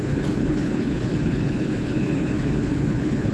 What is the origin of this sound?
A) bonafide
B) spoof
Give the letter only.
B